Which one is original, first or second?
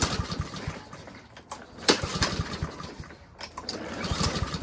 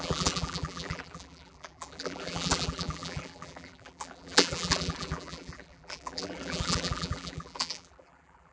first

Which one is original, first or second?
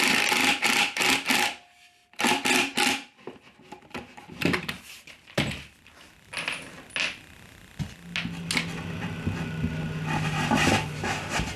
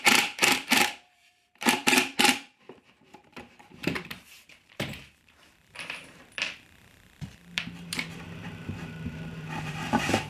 first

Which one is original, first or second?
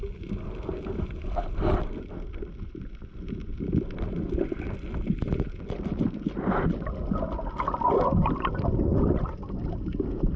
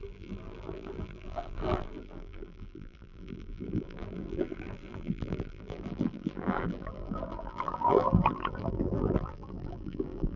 first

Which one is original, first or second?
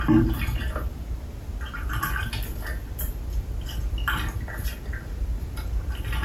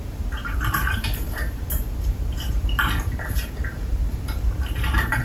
first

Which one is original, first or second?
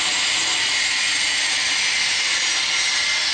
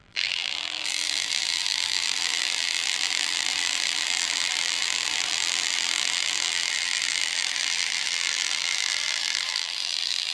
first